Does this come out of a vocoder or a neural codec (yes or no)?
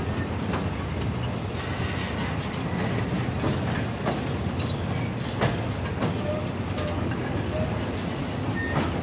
no